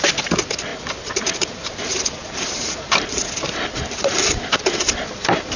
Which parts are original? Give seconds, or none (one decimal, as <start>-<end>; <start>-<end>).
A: 0.0-0.7; 1.7-2.2